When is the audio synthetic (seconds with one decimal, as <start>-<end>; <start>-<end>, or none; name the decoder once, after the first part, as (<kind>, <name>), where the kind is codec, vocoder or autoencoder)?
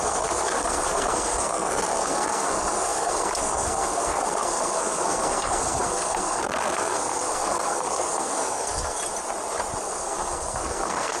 0.0-9.0 (codec, SNAC); 9.8-11.2